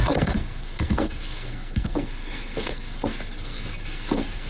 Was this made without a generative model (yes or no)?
no